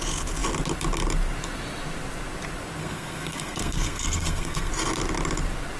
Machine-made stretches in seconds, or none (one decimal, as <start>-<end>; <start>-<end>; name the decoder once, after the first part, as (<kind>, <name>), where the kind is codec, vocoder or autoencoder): 2.8-4.7 (codec, SNAC)